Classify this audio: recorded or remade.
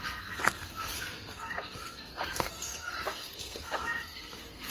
remade